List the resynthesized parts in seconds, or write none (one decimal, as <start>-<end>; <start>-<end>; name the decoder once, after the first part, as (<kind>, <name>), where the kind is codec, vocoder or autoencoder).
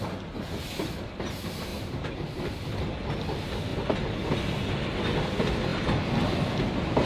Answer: 1.7-2.7 (vocoder, BigVGAN v2)